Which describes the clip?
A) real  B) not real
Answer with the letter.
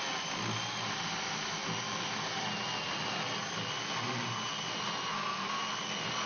A